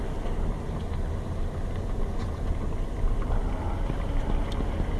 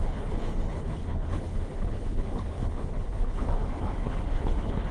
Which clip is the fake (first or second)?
second